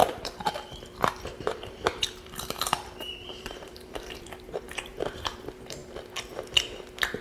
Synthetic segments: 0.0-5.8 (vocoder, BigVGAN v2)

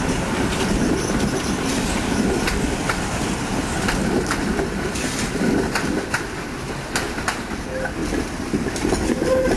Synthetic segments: 4.0-5.3 (vocoder, BigVGAN v2)

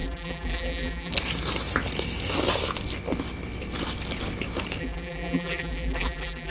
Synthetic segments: 0.0-1.1 (vocoder, BigVGAN v2); 4.8-6.5

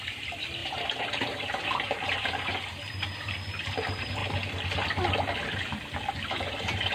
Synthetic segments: 0.0-4.2 (vocoder, BigVGAN v2); 5.7-6.9

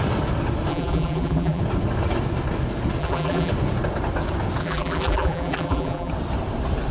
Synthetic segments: 0.7-1.6 (vocoder, BigVGAN v2); 3.0-3.5; 4.6-6.1

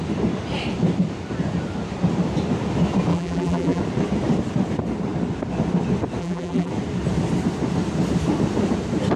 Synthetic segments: 3.1-3.8 (vocoder, BigVGAN v2); 6.2-6.7

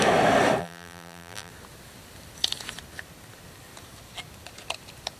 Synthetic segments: 0.6-1.5 (vocoder, BigVGAN v2)